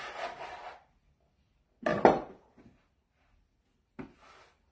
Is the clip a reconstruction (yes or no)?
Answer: no